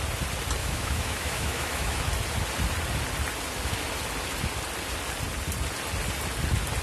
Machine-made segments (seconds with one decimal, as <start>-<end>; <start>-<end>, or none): 0.6-2.0